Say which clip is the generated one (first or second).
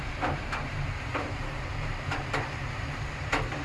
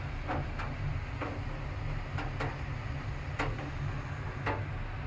first